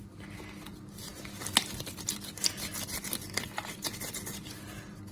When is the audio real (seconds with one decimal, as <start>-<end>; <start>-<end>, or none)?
0.0-5.1